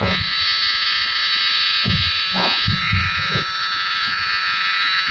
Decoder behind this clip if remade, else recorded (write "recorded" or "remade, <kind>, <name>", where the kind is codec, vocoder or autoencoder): remade, vocoder, Vocos